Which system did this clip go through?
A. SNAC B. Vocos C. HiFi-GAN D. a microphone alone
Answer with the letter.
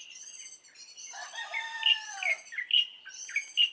D